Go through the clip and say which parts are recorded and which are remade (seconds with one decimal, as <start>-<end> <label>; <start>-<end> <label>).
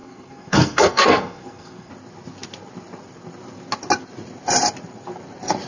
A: 0.0-1.9 remade; 1.9-5.7 recorded